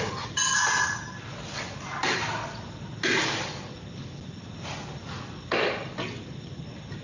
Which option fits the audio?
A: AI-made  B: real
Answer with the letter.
B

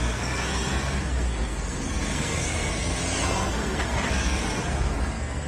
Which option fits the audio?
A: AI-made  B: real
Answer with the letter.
A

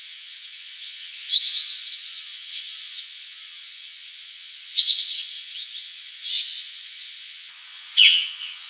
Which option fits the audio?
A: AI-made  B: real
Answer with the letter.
A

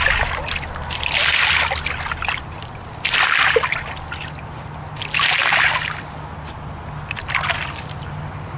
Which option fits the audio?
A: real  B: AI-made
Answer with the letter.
A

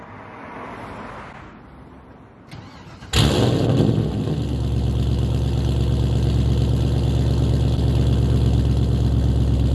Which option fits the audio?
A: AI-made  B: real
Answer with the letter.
B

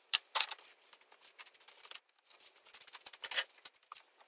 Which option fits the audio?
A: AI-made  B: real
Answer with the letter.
B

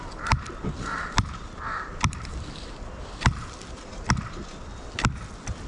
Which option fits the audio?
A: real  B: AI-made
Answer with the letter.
B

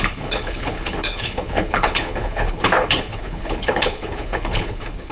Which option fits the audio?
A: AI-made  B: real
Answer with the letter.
A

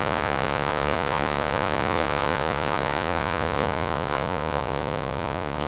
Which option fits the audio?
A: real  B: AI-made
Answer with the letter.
B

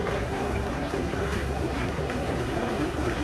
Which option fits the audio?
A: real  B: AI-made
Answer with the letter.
B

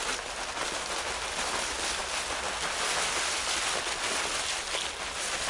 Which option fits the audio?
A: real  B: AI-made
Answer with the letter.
A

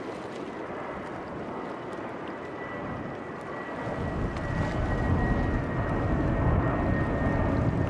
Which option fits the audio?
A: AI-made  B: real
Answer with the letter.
B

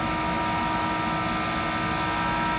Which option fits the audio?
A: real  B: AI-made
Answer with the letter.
A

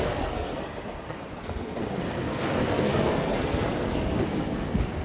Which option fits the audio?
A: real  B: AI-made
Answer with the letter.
B